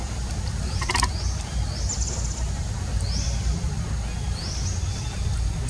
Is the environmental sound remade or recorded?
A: recorded